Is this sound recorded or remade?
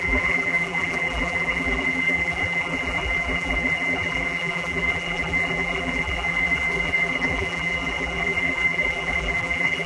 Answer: remade